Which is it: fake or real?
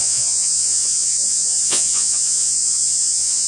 fake